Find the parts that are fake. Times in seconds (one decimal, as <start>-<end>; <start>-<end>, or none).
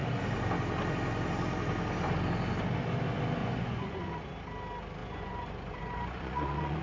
3.4-4.1; 5.0-6.8